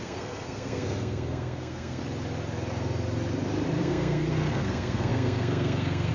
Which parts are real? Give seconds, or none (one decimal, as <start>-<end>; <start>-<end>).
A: 2.0-3.8